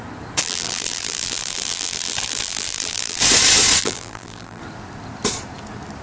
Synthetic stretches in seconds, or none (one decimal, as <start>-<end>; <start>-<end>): 0.4-3.2; 3.8-4.6